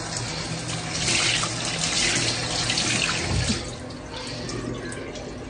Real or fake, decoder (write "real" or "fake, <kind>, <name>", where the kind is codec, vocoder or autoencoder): real